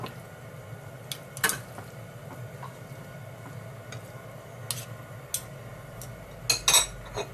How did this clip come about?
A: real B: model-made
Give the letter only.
A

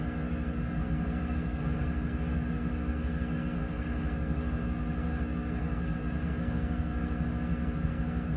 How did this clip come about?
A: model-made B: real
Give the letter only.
A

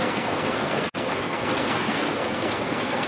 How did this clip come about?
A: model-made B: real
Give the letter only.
A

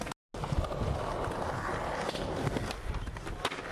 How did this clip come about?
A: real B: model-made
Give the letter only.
A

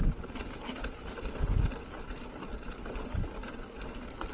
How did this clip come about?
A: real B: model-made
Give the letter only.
A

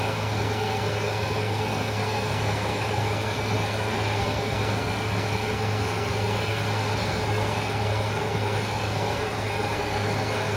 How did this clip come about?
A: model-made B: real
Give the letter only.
A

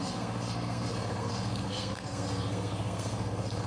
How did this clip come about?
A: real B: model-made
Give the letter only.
B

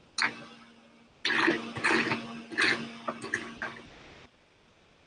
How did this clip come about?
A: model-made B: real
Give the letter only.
B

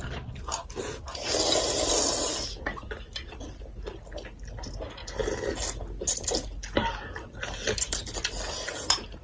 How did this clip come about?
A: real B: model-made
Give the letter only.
A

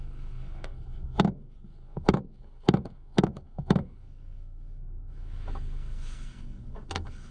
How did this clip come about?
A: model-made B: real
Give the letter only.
A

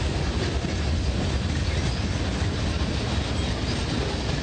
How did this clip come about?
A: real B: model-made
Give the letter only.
A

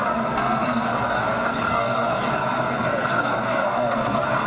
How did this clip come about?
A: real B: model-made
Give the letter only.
B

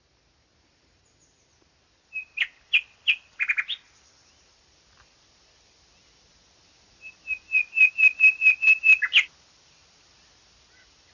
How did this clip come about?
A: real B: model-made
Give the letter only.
A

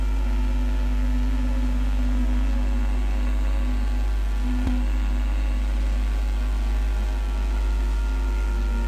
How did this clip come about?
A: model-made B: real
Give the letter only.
A